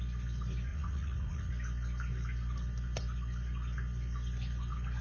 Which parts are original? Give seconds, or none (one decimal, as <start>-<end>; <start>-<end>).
0.0-0.7; 1.5-5.0

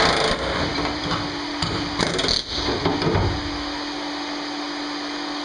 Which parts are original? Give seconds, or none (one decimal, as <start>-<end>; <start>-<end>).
0.0-0.7; 2.1-5.4

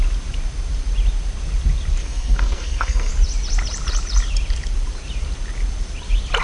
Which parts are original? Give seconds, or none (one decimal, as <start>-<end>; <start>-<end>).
0.0-2.0; 3.1-6.4